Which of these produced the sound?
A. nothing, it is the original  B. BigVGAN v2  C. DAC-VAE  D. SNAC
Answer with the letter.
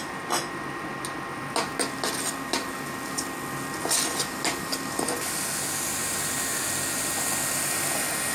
A